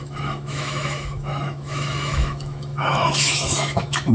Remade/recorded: remade